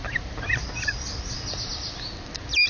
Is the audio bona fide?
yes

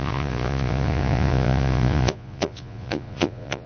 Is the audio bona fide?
no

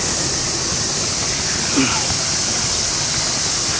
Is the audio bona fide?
yes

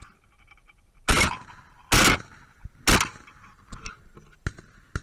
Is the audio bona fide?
yes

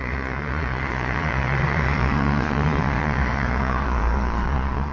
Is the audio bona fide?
no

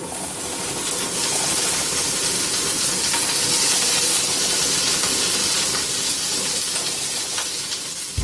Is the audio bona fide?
yes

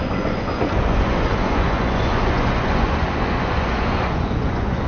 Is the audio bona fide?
no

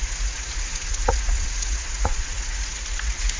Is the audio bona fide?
no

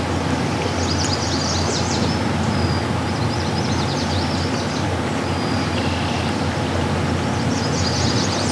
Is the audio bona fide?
yes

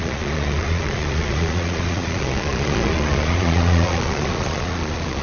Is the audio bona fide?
no